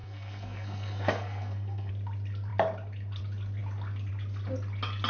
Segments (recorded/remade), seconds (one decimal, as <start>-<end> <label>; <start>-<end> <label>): 0.0-1.9 remade; 1.9-5.1 recorded